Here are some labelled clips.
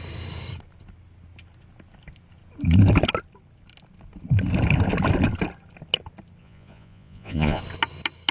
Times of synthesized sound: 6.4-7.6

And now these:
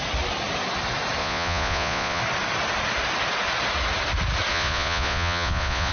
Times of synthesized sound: 1.2-2.2; 4.5-5.9

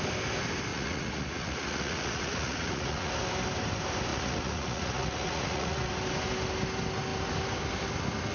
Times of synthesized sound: 0.7-3.1; 4.1-5.9

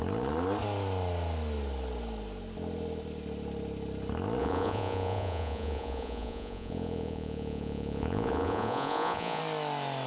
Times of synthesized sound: 4.4-9.4

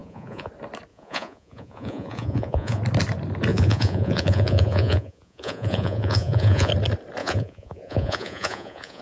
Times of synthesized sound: 0.0-0.5; 0.9-2.8; 3.5-6.7; 7.2-9.0